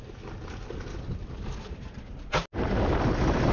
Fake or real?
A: real